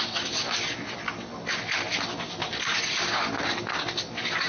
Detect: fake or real real